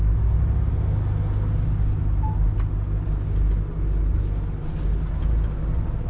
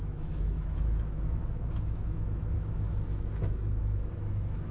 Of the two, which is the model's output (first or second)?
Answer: second